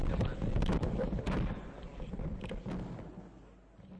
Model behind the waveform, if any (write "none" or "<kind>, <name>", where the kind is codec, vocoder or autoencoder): none